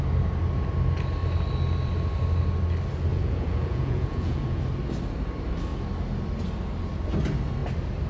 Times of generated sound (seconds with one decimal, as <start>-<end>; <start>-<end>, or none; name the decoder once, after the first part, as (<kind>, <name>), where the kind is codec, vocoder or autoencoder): 3.1-4.6 (vocoder, Vocos)